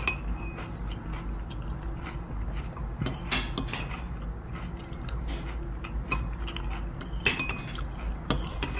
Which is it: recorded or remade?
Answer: recorded